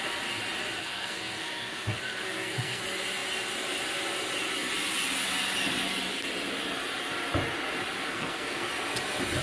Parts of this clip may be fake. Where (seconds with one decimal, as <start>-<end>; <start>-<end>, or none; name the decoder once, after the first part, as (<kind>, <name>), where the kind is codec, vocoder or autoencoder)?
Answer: 0.8-2.8 (codec, SNAC); 8.0-8.7

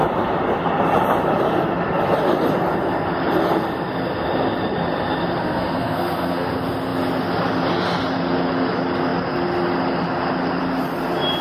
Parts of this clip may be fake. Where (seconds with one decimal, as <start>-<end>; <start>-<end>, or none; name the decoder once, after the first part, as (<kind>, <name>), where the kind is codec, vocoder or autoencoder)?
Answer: 5.4-6.5 (codec, SNAC)

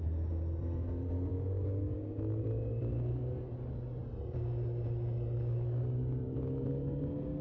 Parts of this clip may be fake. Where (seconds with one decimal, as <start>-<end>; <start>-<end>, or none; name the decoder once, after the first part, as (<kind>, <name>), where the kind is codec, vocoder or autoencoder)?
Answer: none

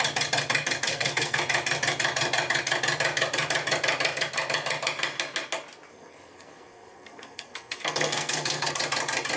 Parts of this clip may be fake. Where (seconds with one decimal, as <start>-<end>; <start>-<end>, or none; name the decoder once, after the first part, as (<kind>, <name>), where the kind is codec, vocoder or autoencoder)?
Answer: 0.9-1.4 (codec, SNAC); 5.9-8.7

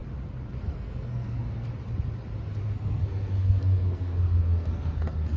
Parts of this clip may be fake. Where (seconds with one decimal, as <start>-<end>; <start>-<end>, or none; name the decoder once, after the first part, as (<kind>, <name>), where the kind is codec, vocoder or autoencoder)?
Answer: 0.6-1.7 (codec, SNAC); 2.6-5.4